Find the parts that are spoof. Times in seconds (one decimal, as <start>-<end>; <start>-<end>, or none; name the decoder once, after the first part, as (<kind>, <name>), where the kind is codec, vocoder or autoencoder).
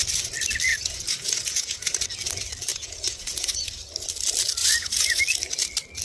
0.7-2.0 (vocoder, Vocos); 2.7-3.5; 4.6-5.2